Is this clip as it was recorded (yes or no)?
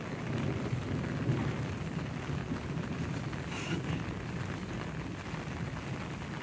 yes